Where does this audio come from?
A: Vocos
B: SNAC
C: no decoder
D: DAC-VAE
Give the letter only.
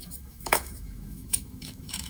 D